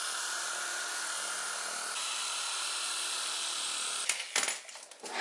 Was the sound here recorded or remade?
recorded